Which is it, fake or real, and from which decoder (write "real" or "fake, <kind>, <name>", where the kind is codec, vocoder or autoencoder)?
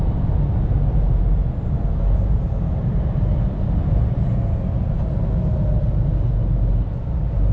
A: real